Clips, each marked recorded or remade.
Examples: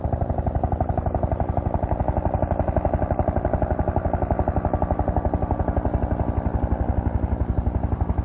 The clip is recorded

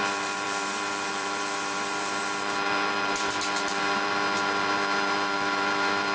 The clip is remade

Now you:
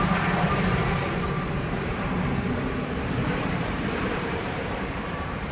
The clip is remade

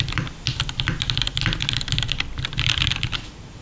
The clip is recorded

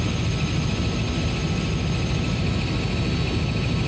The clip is recorded